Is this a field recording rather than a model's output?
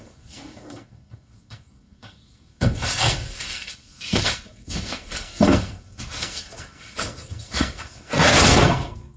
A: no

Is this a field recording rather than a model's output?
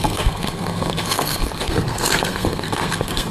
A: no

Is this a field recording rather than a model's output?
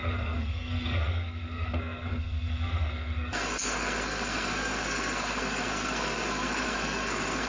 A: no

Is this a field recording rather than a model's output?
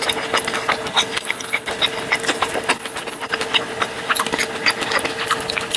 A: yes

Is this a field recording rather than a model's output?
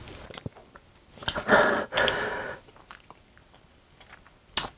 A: yes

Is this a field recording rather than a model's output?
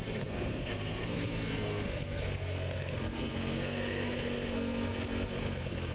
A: no